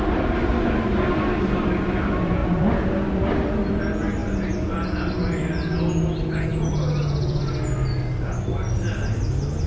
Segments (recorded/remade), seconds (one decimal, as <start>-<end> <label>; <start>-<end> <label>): 0.0-6.5 recorded; 6.5-7.4 remade; 7.4-9.7 recorded